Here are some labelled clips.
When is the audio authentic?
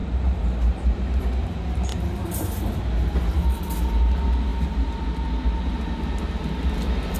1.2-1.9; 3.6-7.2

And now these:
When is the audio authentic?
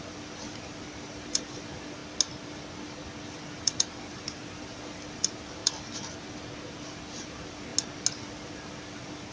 2.0-3.2; 5.6-7.2; 7.7-8.3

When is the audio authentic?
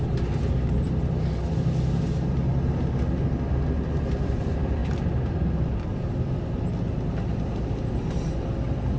0.0-9.0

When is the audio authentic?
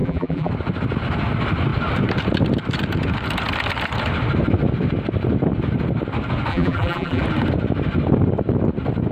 0.5-6.5; 7.2-9.1